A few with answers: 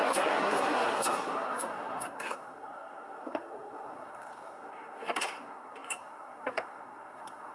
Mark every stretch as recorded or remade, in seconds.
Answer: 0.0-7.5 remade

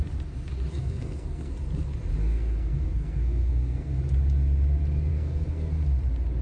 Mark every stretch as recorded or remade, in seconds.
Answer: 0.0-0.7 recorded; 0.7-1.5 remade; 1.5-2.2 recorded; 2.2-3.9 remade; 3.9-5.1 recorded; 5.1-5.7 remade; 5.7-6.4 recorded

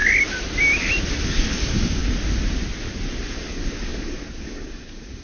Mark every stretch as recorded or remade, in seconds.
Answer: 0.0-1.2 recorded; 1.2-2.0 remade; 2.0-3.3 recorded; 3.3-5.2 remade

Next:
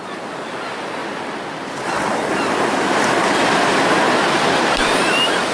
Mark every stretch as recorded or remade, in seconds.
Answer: 0.0-1.0 remade; 1.0-4.3 recorded; 4.3-5.5 remade

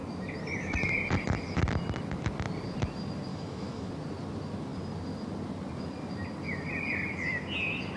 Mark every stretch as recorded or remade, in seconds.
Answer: 0.0-3.3 recorded; 3.3-3.9 remade; 3.9-8.0 recorded

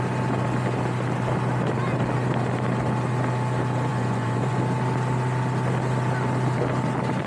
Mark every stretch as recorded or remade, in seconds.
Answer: 0.0-3.9 recorded; 3.9-4.6 remade; 4.6-7.3 recorded